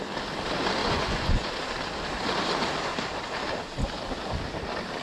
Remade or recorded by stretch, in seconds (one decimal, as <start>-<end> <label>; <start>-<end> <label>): 0.0-0.8 recorded; 0.8-1.5 remade; 1.5-5.0 recorded